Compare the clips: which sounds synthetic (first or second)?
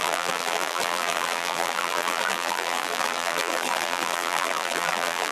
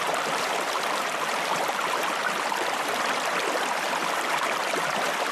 first